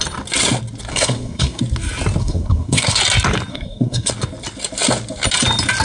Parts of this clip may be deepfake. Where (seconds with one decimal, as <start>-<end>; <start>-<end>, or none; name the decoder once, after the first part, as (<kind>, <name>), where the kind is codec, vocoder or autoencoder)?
0.9-1.6 (codec, SNAC); 2.2-3.0; 3.5-4.1